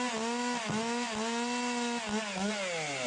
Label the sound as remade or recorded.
recorded